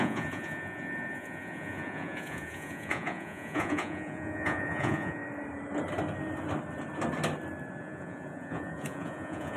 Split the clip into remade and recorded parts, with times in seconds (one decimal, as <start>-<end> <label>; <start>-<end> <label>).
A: 0.0-5.2 remade; 5.2-7.8 recorded; 7.8-9.6 remade